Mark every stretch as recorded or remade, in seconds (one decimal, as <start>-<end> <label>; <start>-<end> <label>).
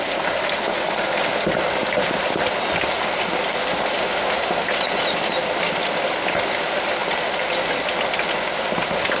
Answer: 0.0-9.2 recorded